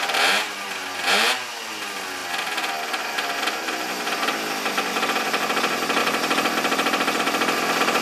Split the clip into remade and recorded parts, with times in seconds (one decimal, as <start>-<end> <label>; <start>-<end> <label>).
0.0-2.2 remade; 2.2-6.0 recorded; 6.0-8.0 remade